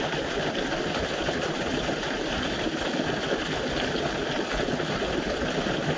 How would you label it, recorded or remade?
recorded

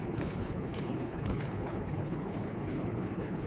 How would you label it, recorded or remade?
remade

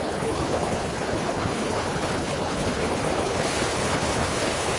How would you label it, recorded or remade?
remade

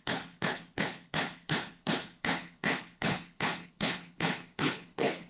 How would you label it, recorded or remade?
remade